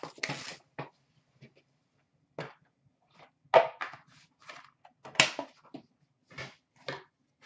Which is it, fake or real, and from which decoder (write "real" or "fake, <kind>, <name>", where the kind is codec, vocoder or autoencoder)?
real